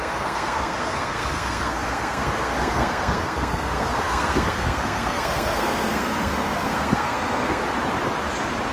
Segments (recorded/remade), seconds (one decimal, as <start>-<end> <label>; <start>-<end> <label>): 0.0-7.6 remade; 7.6-8.7 recorded

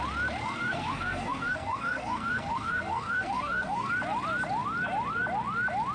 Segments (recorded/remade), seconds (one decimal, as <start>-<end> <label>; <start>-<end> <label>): 0.0-0.4 recorded; 0.4-3.9 remade; 3.9-5.9 recorded

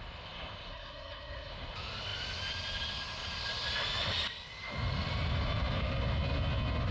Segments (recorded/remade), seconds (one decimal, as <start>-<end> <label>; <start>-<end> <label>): 0.0-0.7 recorded; 0.7-1.5 remade; 1.5-6.9 recorded

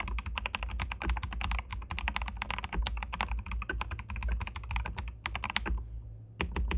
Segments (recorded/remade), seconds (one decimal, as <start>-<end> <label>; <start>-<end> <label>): 0.0-6.8 recorded

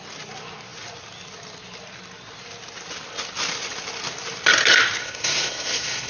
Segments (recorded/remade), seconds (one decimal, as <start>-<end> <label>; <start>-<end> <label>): 0.0-5.0 recorded; 5.0-6.1 remade